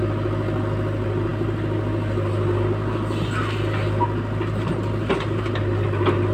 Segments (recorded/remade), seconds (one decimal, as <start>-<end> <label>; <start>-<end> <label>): 0.0-6.3 recorded